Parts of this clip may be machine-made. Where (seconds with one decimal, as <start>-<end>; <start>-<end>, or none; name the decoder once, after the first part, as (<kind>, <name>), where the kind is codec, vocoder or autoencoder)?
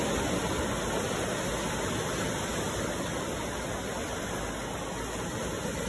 none